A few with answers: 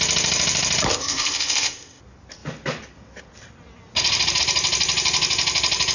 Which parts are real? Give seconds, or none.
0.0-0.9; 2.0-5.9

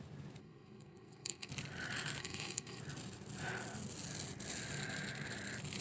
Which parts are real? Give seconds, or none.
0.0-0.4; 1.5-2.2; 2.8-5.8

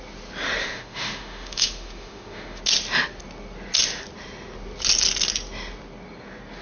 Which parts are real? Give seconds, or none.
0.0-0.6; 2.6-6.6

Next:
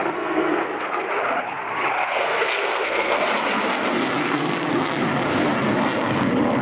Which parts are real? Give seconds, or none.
1.0-2.0; 3.2-4.2; 4.7-6.6